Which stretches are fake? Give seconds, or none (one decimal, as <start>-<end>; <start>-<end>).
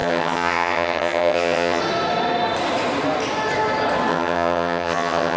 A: 0.0-1.8; 4.1-5.4